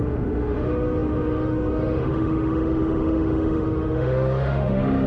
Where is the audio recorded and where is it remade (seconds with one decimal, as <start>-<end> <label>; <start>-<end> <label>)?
0.0-5.1 remade